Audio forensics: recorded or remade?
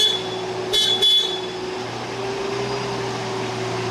recorded